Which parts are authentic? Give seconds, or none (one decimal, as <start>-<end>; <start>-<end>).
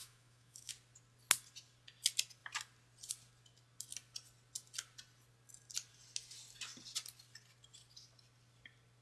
0.7-9.0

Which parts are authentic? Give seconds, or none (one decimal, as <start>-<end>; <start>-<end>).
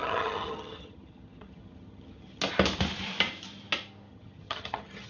2.4-4.1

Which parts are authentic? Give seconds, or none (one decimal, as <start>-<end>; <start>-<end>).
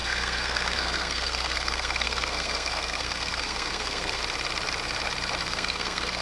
4.2-5.4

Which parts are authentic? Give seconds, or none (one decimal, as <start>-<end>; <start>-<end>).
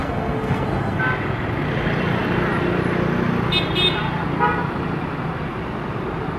1.0-6.4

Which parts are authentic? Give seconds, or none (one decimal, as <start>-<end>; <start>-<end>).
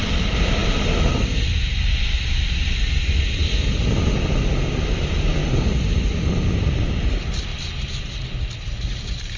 0.6-4.1; 5.4-5.9; 7.5-8.0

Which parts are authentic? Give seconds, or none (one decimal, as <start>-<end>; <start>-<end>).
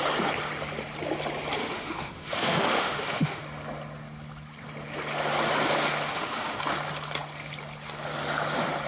0.0-1.6; 3.4-6.1; 6.6-8.9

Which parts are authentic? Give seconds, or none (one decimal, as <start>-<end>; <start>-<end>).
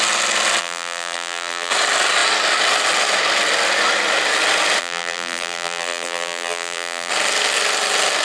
0.0-0.6; 1.7-4.8; 7.1-8.2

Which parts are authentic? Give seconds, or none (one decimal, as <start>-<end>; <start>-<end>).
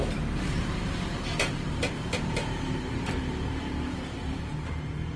none